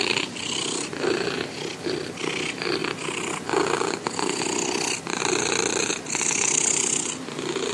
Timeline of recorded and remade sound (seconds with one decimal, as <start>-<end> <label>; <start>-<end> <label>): 0.0-7.7 recorded